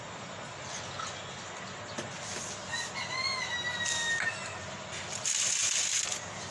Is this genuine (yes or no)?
yes